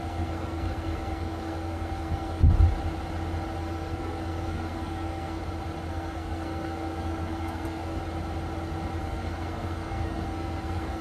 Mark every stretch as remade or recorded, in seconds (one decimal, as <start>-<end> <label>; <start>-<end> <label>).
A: 0.0-2.4 remade; 2.4-3.6 recorded; 3.6-5.4 remade; 5.4-5.9 recorded; 5.9-8.0 remade; 8.0-9.0 recorded; 9.0-11.0 remade